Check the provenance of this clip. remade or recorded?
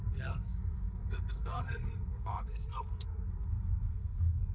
remade